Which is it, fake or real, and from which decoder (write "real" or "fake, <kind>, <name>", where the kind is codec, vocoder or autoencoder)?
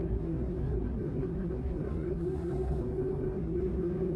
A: fake, codec, SNAC